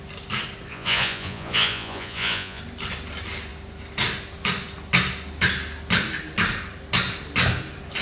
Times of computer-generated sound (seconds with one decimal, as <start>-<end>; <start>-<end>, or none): 0.7-2.6